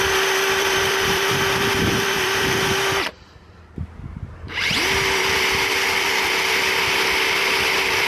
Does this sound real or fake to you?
fake